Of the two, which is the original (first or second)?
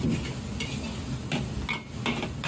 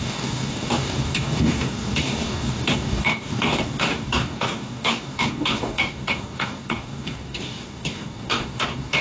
first